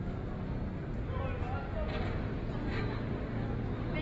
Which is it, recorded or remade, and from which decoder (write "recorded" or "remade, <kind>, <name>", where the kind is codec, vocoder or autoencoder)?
recorded